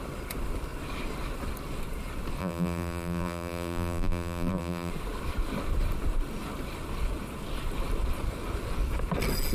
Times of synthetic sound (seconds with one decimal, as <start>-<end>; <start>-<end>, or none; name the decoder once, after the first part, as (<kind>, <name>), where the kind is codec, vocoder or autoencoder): 2.4-4.9 (vocoder, BigVGAN v2)